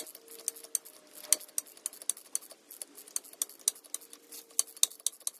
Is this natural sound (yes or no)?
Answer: yes